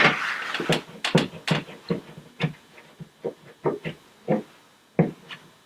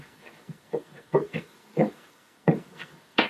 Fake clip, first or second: second